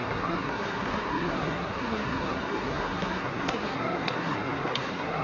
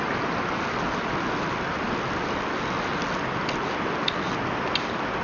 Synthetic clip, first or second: first